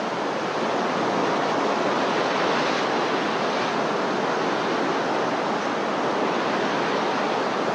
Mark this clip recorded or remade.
recorded